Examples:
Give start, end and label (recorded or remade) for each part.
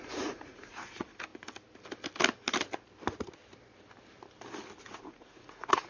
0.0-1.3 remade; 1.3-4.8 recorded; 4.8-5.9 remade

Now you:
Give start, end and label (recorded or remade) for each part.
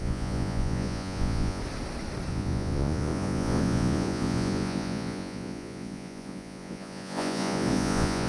0.0-1.6 remade; 1.6-2.3 recorded; 2.3-8.3 remade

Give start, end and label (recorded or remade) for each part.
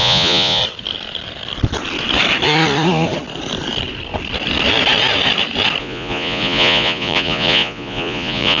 0.0-0.6 remade; 0.6-5.8 recorded; 5.8-8.6 remade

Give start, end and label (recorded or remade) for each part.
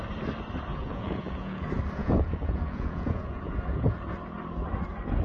0.0-0.7 recorded; 0.7-1.6 remade; 1.6-2.0 recorded; 2.0-3.6 remade; 3.6-5.2 recorded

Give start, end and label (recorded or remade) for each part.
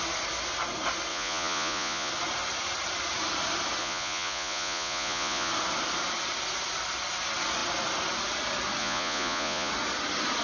0.0-1.1 recorded; 1.1-2.1 remade; 2.1-3.8 recorded; 3.8-5.5 remade; 5.5-8.8 recorded; 8.8-9.7 remade; 9.7-10.4 recorded